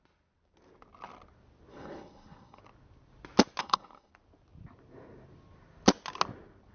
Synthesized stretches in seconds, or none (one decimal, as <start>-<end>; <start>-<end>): 1.7-2.6; 3.6-4.1